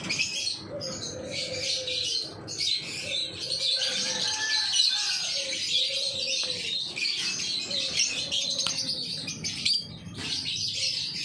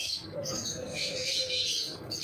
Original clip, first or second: first